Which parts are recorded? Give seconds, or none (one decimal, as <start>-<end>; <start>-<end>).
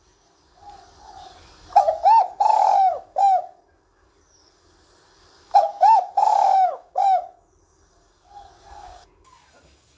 none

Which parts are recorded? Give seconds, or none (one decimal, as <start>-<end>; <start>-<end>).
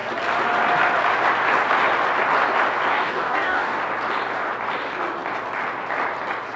0.0-2.9; 3.8-6.6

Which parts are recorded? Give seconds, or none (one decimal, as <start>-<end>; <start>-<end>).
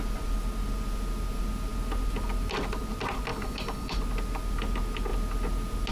0.0-3.3; 4.0-5.9